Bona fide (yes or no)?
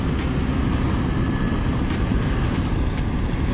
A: yes